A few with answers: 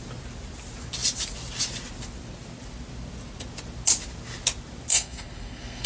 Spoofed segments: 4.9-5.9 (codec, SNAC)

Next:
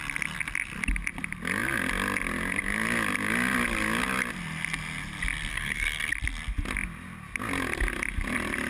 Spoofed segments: 5.5-6.1 (codec, SNAC)

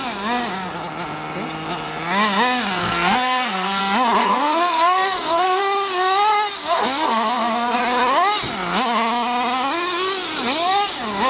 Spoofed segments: 2.8-3.8 (codec, SNAC); 4.2-5.6; 6.6-7.8

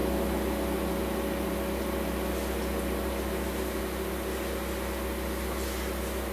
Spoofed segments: none

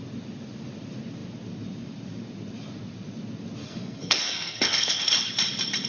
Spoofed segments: 3.6-5.0 (codec, SNAC)